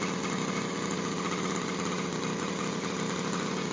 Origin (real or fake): real